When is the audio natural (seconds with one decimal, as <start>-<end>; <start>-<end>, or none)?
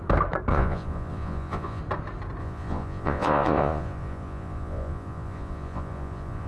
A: 0.0-0.5; 1.8-2.4